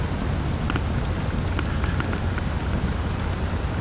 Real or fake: real